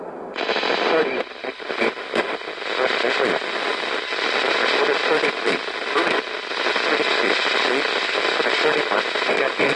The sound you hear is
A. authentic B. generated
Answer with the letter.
A